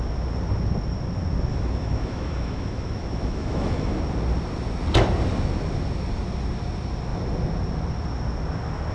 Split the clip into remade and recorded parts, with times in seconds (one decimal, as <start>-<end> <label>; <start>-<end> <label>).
0.0-1.5 recorded; 1.5-4.0 remade; 4.0-8.9 recorded